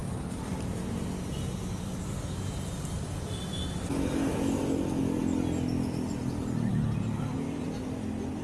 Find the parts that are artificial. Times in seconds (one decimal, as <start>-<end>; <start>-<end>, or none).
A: none